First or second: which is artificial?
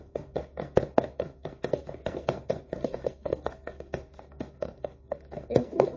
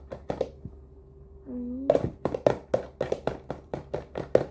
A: first